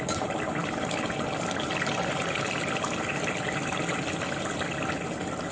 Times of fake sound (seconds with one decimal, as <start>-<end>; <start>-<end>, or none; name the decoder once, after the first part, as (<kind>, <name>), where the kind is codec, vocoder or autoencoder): none